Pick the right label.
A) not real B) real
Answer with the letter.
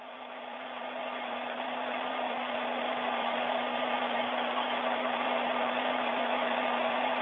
A